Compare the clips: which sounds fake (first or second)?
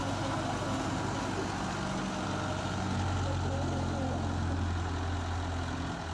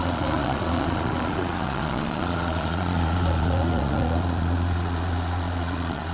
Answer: second